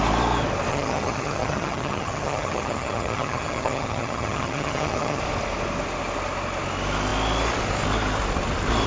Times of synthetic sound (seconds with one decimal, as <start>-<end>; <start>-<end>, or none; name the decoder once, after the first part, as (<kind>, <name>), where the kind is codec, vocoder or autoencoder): 0.7-5.2 (vocoder, HiFi-GAN)